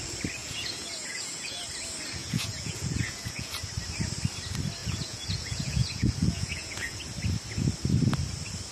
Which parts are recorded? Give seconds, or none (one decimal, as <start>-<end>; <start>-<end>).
0.0-0.4; 1.6-2.2; 3.5-4.8; 7.0-8.7